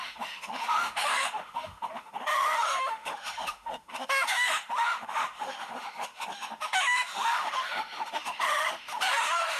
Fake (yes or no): yes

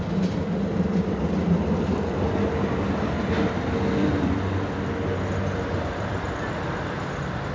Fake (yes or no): no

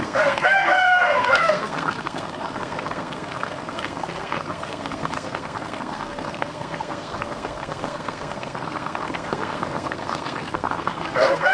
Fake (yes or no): yes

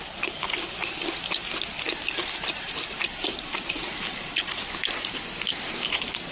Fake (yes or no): no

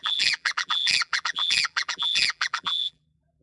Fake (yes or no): yes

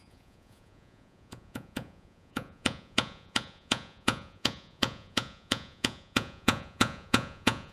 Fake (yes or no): yes